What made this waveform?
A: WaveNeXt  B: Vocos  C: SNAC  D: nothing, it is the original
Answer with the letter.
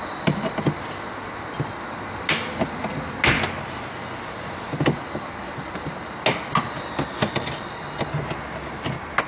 D